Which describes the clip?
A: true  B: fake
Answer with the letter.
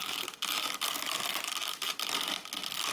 A